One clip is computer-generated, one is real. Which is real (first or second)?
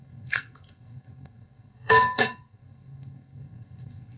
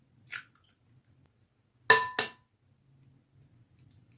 second